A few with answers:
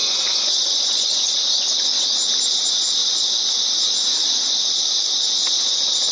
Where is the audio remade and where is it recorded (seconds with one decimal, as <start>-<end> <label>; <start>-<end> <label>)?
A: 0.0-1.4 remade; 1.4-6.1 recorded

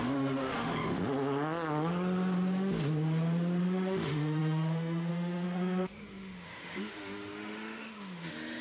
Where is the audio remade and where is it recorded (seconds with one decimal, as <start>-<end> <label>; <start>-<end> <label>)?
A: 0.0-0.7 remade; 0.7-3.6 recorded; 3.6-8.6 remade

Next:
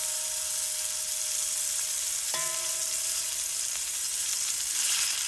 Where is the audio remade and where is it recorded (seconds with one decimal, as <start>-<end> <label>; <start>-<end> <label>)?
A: 0.0-0.5 remade; 0.5-1.7 recorded; 1.7-5.3 remade